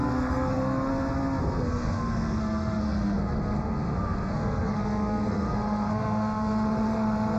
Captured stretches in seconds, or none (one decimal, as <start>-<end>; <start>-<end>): 0.9-1.4